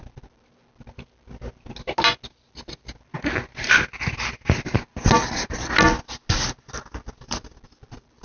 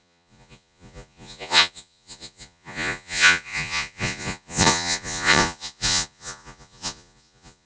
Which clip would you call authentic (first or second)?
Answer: first